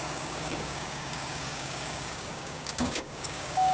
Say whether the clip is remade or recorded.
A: remade